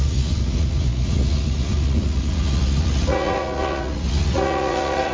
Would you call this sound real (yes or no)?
no